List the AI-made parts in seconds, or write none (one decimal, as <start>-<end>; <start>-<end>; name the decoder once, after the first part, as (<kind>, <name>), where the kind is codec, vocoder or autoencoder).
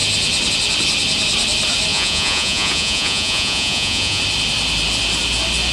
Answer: 1.9-4.2 (vocoder, Vocos)